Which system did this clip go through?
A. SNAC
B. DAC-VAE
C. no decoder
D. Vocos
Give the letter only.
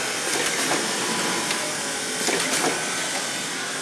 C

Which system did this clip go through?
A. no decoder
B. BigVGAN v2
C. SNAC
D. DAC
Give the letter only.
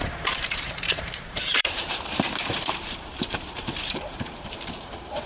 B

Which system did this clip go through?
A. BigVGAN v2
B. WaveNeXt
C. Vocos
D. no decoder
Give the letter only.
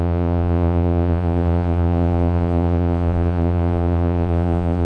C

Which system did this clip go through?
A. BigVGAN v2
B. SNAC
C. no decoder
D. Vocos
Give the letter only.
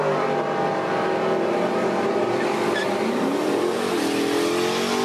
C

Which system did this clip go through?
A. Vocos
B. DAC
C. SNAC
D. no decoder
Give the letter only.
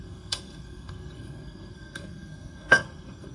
C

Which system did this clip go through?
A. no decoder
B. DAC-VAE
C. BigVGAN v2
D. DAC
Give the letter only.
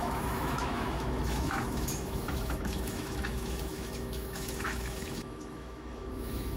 B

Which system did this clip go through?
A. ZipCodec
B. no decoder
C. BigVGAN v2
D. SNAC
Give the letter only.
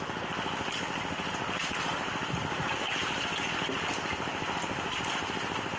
B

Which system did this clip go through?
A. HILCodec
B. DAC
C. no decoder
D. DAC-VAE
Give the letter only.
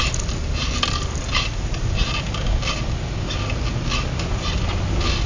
C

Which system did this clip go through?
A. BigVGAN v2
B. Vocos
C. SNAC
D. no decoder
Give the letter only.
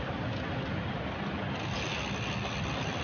D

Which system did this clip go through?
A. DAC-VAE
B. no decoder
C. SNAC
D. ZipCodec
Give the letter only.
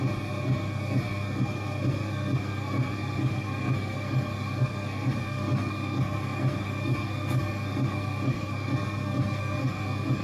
C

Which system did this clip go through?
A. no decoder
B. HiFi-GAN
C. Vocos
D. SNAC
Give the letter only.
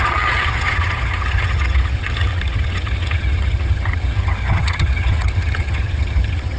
B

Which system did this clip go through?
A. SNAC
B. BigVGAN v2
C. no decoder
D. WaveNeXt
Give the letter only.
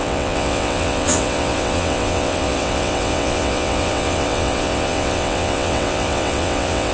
D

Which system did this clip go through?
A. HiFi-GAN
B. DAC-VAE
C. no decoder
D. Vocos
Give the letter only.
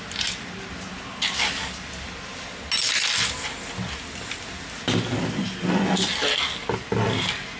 C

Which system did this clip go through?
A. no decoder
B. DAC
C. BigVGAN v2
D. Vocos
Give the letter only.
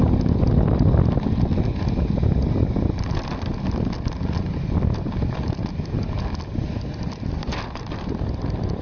A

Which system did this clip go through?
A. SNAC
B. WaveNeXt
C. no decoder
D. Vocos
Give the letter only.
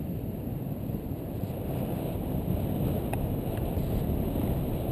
C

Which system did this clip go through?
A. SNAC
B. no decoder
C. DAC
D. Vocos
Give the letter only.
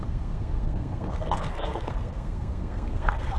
A